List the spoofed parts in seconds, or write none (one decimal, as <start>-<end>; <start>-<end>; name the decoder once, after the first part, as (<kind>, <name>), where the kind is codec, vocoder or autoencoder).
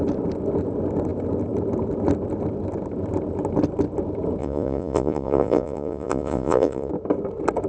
4.4-6.9 (vocoder, Vocos)